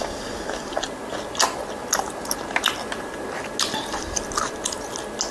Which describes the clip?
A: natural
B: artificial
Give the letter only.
A